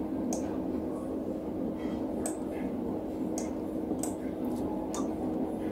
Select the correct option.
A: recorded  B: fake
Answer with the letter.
A